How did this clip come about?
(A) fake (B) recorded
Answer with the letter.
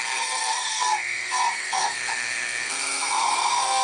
A